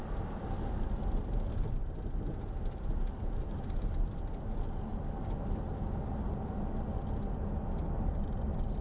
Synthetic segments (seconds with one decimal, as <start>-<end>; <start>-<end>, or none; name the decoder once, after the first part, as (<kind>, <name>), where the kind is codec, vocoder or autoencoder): none